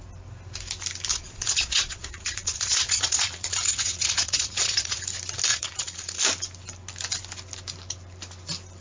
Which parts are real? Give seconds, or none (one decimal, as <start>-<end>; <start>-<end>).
0.0-1.1; 5.0-5.5; 6.2-8.8